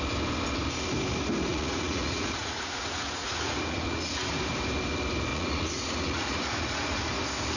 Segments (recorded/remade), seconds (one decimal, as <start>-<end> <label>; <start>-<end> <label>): 0.0-1.5 recorded; 1.5-4.3 remade; 4.3-5.3 recorded; 5.3-7.0 remade; 7.0-7.6 recorded